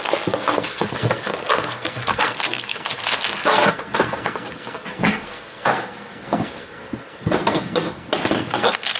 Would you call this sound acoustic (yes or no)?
no